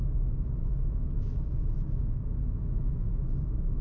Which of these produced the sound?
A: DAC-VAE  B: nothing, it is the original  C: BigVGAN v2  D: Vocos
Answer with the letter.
A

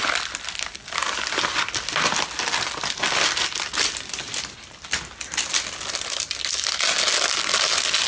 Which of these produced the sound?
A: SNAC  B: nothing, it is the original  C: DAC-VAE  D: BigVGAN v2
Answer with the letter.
B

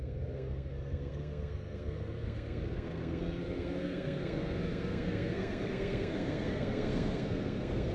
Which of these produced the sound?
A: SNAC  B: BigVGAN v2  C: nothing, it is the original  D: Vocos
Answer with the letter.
A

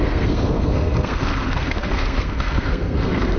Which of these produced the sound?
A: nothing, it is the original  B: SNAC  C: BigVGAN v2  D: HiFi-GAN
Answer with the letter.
B